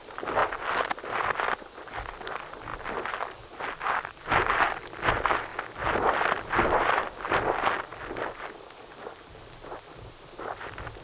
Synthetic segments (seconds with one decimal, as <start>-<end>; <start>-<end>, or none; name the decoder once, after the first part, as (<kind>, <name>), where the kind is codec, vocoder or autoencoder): none